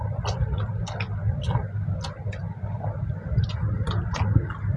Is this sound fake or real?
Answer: real